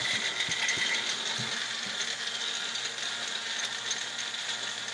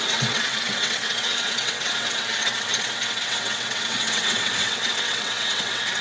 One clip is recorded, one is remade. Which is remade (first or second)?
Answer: second